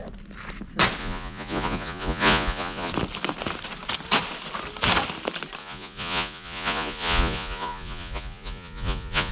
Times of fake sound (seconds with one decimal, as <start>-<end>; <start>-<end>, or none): 1.0-2.9; 5.6-9.3